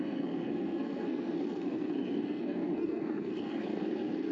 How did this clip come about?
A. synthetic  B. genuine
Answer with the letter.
A